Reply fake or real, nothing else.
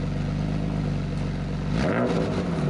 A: real